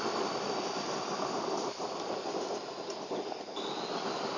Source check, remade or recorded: recorded